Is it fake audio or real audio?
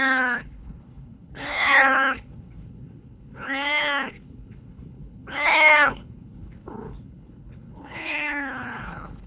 fake